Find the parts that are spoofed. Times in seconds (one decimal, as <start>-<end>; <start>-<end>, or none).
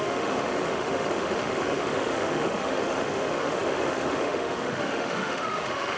0.0-6.0